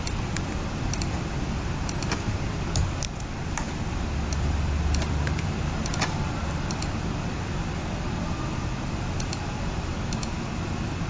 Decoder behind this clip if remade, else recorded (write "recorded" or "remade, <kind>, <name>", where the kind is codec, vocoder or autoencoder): remade, vocoder, BigVGAN v2